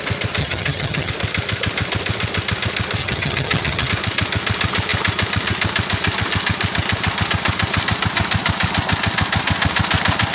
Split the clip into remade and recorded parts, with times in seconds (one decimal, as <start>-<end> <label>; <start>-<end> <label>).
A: 0.0-0.4 recorded; 0.4-1.1 remade; 1.1-3.0 recorded; 3.0-3.9 remade; 3.9-10.3 recorded